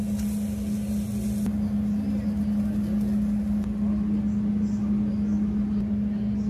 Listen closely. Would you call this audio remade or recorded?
recorded